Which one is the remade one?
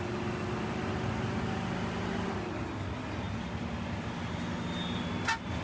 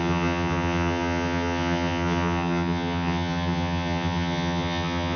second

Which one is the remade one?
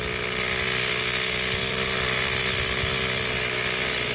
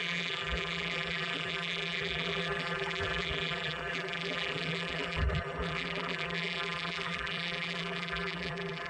second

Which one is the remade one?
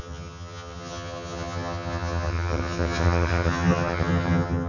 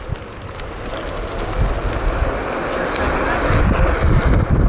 first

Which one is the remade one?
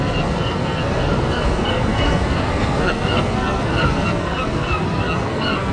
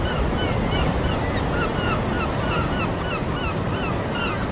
first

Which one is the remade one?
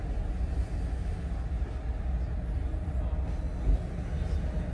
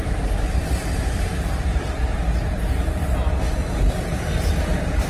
second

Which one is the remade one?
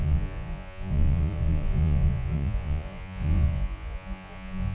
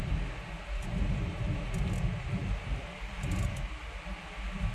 first